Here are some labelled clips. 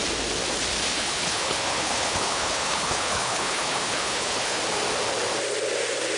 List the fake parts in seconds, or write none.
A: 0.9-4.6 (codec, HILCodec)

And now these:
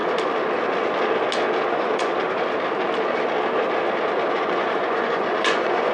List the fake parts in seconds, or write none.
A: 1.7-2.1 (vocoder, Vocos); 4.3-5.9

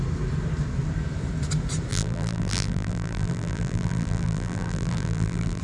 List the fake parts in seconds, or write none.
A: 1.9-5.6 (vocoder, BigVGAN v2)

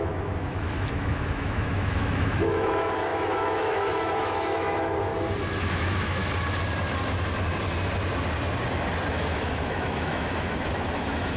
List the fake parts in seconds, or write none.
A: 0.0-5.1 (autoencoder, DAC-VAE); 5.6-6.2; 9.1-11.4

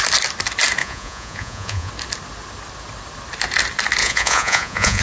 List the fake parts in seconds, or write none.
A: 0.8-1.9 (vocoder, Vocos); 4.0-5.0

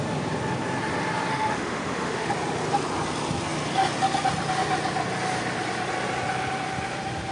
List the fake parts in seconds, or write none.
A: 1.3-2.3 (autoencoder, DAC-VAE)

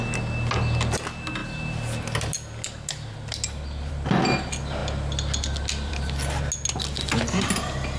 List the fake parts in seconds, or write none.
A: none

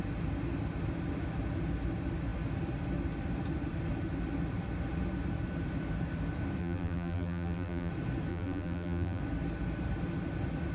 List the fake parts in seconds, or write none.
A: 6.6-7.9 (vocoder, BigVGAN v2); 8.3-9.2